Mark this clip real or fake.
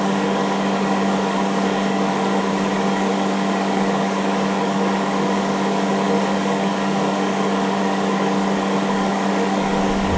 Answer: fake